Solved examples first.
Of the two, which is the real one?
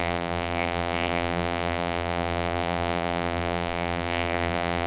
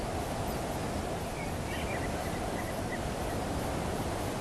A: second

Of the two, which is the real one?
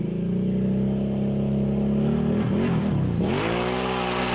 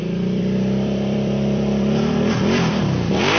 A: first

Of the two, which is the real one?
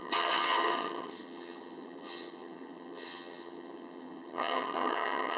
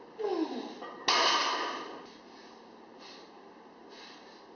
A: second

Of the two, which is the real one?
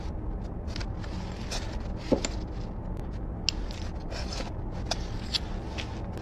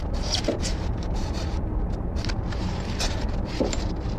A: first